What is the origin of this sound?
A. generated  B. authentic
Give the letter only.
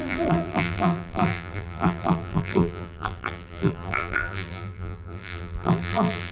A